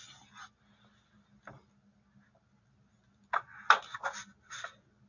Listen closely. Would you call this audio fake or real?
real